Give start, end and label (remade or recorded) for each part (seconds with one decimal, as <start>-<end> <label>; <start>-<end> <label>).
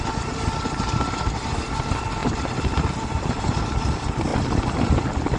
0.0-5.4 recorded